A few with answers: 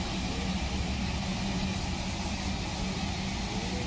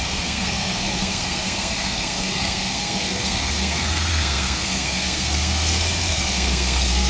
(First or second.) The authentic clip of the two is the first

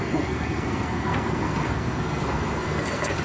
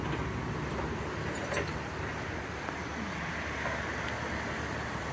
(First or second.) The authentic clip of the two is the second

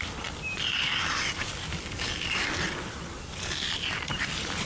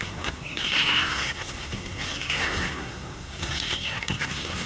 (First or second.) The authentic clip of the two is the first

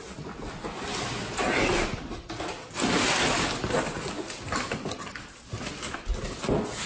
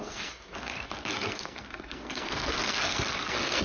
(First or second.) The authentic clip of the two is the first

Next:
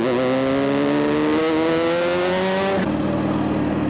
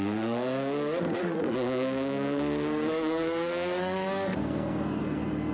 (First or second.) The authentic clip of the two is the first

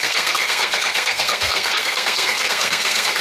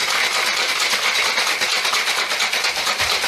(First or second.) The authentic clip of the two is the second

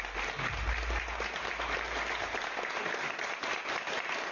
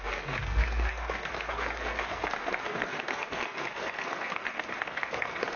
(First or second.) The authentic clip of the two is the first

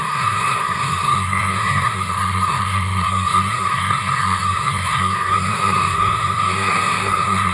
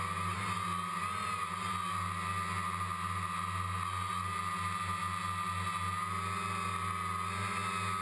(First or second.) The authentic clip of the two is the second